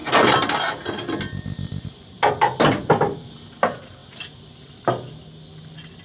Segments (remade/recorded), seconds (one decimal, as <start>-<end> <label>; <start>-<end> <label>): 0.0-6.0 recorded